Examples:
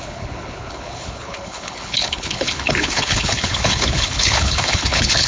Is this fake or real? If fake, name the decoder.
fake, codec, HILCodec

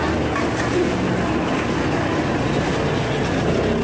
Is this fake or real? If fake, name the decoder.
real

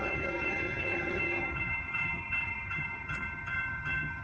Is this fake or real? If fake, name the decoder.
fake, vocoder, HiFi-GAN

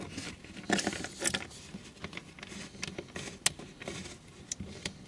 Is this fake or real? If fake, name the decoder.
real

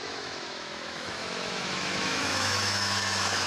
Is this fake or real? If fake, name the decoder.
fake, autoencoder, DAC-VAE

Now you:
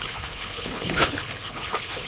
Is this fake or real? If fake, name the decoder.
fake, codec, HILCodec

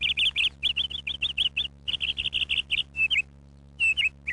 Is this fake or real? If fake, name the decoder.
real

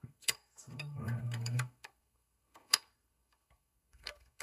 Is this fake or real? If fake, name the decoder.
fake, codec, SNAC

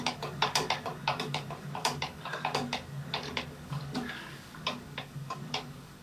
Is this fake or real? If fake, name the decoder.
fake, codec, DAC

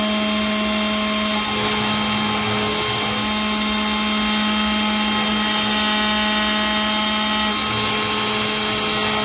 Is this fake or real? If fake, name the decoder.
real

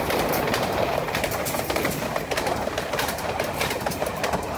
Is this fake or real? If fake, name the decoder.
fake, vocoder, BigVGAN v2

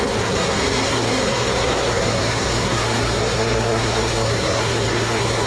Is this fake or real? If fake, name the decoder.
fake, codec, SNAC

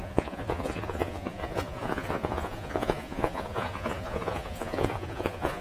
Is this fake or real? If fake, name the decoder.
fake, vocoder, Vocos